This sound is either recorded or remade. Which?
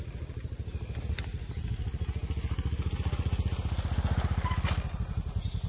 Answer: recorded